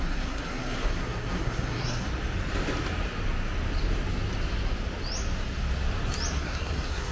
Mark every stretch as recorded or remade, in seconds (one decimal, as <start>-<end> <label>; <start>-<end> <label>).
0.0-2.1 remade; 2.1-6.4 recorded; 6.4-7.1 remade